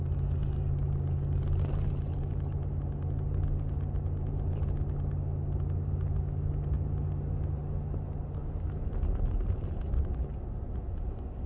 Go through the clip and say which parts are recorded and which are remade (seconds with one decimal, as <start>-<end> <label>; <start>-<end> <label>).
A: 0.0-11.5 recorded